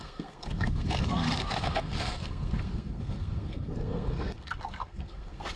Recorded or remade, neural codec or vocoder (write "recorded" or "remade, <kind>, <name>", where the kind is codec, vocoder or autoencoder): remade, codec, SNAC